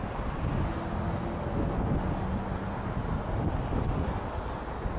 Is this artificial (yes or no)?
no